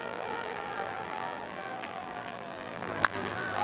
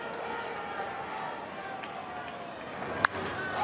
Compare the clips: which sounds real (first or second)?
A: second